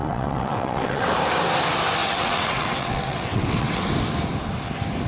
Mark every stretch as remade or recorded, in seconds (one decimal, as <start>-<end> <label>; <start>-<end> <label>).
0.0-1.1 remade; 1.1-2.0 recorded; 2.0-3.9 remade; 3.9-5.1 recorded